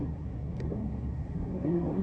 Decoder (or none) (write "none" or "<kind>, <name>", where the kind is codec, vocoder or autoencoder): codec, SNAC